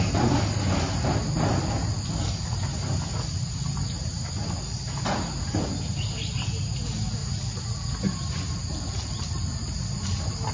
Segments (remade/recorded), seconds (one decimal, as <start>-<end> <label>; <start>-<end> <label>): 0.0-10.5 recorded